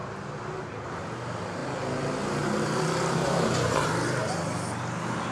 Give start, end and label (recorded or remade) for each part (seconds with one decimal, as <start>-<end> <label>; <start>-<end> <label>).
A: 0.0-0.7 recorded; 0.7-1.6 remade; 1.6-2.3 recorded; 2.3-5.3 remade